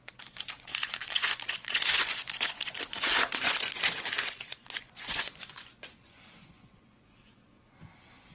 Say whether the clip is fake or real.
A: fake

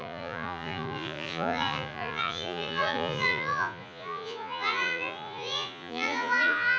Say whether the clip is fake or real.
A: fake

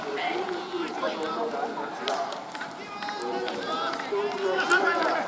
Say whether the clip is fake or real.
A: real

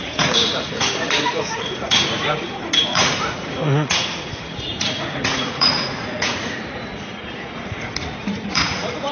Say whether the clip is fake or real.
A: fake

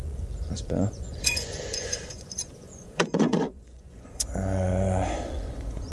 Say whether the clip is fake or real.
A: fake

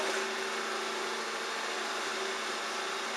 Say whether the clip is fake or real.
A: real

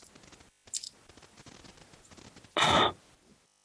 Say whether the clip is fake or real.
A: real